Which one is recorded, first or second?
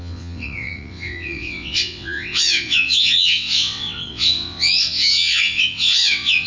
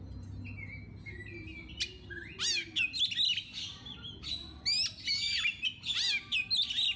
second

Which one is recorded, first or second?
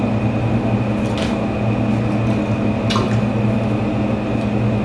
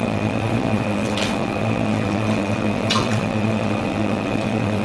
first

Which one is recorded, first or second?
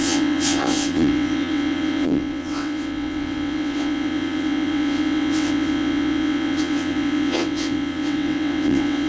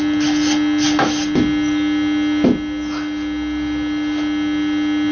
second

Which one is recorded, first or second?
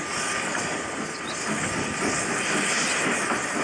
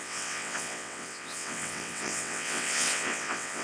first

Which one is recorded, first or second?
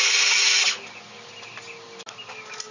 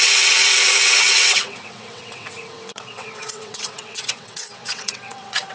first